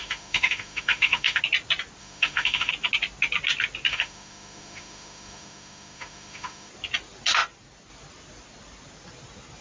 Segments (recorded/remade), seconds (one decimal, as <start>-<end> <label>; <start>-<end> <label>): 0.0-1.4 remade; 1.4-2.0 recorded; 2.0-2.7 remade; 2.7-3.9 recorded; 3.9-6.7 remade; 6.7-9.6 recorded